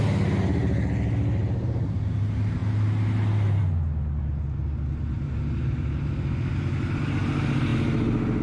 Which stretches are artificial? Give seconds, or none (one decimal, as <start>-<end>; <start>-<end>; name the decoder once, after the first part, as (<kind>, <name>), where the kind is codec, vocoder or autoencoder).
7.7-8.4 (vocoder, BigVGAN v2)